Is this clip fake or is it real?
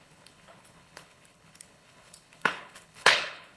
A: fake